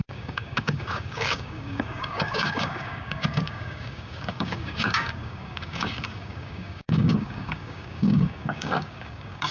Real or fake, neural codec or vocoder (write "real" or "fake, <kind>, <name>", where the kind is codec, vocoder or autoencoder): fake, codec, DAC